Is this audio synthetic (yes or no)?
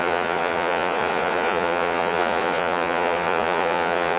yes